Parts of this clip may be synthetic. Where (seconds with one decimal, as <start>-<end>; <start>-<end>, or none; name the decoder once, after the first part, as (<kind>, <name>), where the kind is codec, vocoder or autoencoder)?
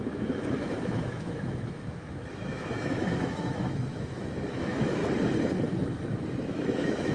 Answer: 0.0-5.0 (autoencoder, DAC-VAE); 6.4-7.1